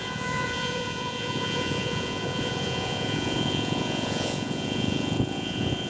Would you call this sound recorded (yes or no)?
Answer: no